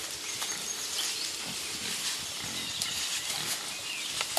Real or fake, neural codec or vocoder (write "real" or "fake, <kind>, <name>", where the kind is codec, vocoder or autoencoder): real